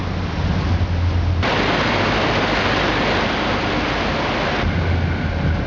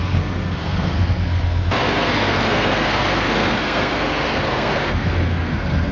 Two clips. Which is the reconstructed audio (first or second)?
second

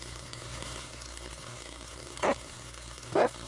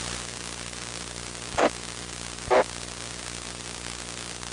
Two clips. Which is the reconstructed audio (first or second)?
first